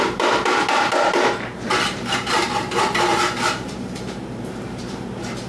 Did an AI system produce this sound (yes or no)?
yes